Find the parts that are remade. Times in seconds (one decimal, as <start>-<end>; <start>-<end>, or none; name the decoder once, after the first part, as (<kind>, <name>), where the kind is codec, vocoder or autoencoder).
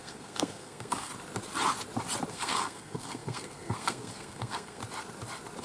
0.0-1.1 (codec, SNAC); 2.3-4.8